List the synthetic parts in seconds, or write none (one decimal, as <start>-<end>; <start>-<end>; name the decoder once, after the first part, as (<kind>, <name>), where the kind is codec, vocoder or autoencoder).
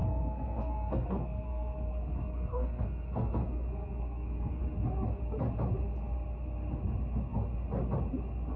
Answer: 0.0-4.6 (codec, SNAC)